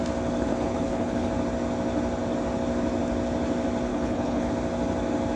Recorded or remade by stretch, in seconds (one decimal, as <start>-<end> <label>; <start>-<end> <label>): 0.0-0.5 recorded; 0.5-1.3 remade; 1.3-3.9 recorded; 3.9-4.5 remade; 4.5-5.4 recorded